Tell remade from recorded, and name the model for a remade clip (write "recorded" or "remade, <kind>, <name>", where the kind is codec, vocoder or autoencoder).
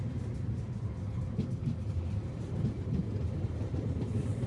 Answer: recorded